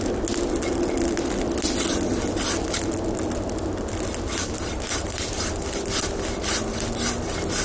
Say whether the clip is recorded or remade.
recorded